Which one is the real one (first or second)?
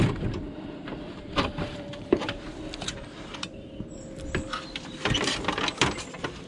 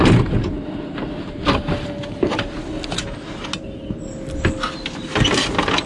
second